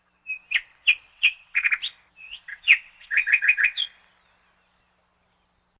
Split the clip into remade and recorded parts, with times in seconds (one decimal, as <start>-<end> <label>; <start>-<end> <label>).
0.0-1.1 recorded; 1.1-1.7 remade; 1.7-2.2 recorded; 2.2-3.8 remade; 3.8-5.8 recorded

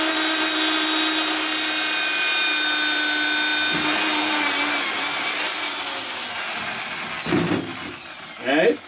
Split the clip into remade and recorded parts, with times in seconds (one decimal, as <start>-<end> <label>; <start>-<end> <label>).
0.0-8.9 recorded